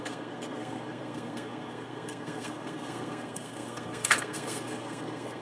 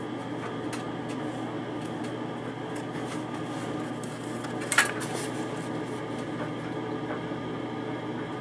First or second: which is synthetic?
first